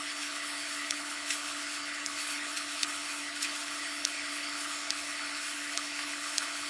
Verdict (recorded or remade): remade